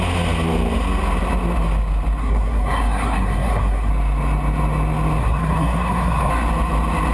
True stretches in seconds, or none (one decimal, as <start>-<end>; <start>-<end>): 0.0-2.2; 3.9-5.2; 6.3-7.1